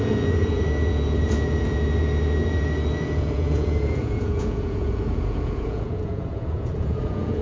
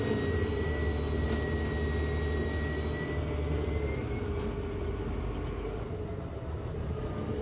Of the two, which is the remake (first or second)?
first